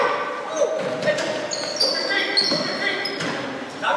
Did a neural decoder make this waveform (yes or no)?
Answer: no